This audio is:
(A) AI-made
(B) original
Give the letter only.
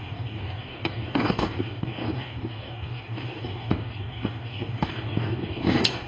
A